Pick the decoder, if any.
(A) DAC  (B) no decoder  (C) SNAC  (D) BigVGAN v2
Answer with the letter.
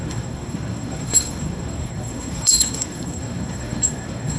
C